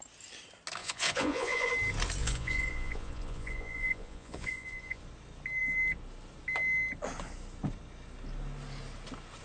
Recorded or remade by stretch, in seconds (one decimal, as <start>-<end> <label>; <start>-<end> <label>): 0.0-0.8 recorded; 0.8-1.7 remade; 1.7-2.2 recorded; 2.2-5.0 remade; 5.0-9.4 recorded